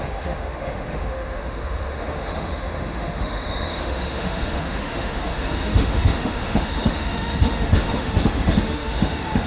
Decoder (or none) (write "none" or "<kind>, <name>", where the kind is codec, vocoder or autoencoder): autoencoder, DAC-VAE